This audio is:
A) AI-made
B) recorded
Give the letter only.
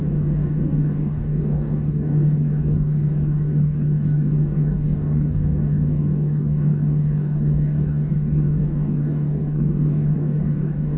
A